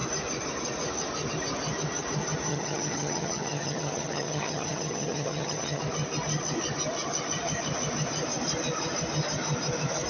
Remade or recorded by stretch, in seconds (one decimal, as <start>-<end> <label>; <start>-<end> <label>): 0.0-2.5 recorded; 2.5-5.8 remade; 5.8-10.1 recorded